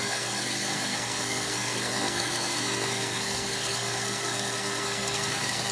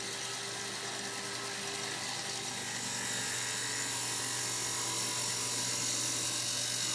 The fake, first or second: first